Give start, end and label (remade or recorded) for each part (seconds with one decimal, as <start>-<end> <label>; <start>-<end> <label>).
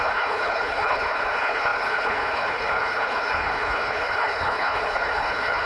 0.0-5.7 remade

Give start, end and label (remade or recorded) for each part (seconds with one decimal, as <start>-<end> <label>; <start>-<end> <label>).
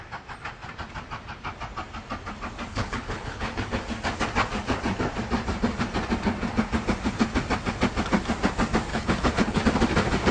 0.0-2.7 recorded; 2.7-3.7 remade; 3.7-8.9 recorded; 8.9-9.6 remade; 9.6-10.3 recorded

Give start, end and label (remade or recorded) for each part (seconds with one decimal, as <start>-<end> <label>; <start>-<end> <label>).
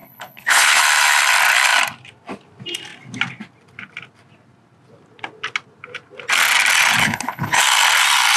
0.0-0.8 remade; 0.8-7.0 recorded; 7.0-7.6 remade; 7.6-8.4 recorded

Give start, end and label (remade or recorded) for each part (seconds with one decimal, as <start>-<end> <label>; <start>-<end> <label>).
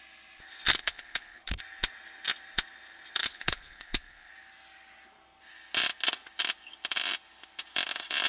0.0-0.7 recorded; 0.7-1.6 remade; 1.6-3.2 recorded; 3.2-4.3 remade; 4.3-8.3 recorded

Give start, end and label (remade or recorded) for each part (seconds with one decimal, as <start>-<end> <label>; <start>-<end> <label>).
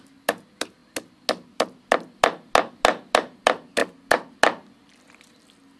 0.0-5.8 recorded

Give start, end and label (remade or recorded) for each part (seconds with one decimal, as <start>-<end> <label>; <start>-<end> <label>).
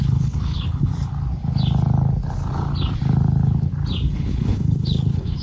0.0-0.9 remade; 0.9-4.1 recorded; 4.1-5.4 remade